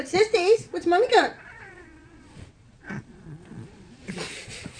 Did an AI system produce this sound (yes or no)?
yes